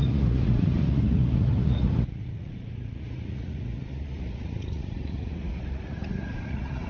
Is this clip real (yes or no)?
no